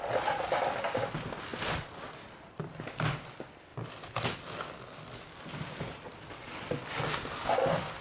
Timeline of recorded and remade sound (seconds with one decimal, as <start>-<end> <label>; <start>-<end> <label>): 0.0-8.0 recorded